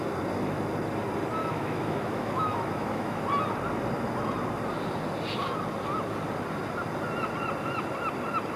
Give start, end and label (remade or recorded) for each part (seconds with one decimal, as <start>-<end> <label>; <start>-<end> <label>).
0.0-1.4 recorded; 1.4-3.2 remade; 3.2-8.6 recorded